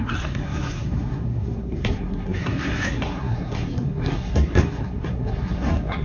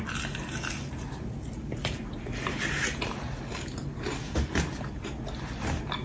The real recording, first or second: second